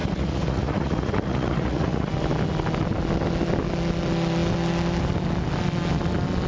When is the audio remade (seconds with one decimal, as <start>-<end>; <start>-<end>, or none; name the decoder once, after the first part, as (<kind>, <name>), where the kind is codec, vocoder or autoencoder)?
0.0-2.1 (vocoder, Vocos)